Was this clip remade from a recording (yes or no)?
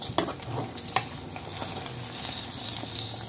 no